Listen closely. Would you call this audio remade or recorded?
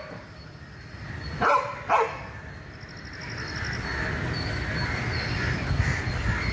recorded